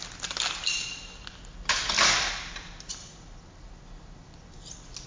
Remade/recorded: recorded